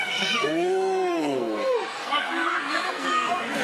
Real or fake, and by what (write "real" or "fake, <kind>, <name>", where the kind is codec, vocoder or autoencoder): fake, codec, SNAC